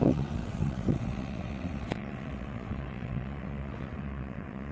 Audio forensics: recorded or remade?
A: remade